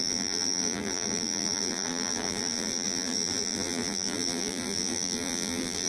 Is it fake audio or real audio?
fake